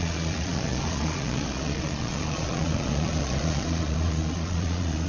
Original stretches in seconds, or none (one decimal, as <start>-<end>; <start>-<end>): none